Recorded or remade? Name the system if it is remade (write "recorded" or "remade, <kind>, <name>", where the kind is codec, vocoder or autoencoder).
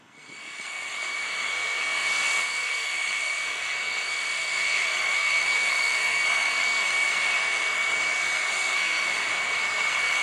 remade, codec, SNAC